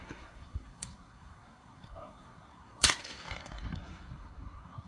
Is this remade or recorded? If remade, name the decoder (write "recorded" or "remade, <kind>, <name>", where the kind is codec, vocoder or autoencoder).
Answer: remade, codec, SNAC